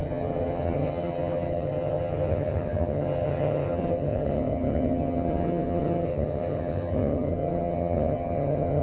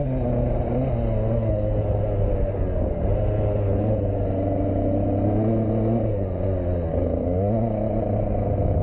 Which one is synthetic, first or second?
first